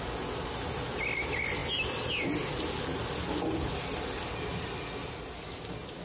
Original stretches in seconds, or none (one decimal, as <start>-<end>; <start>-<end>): 0.0-6.0